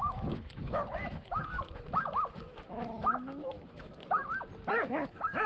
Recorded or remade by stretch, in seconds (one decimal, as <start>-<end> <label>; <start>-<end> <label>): 0.0-4.0 remade; 4.0-4.7 recorded; 4.7-5.5 remade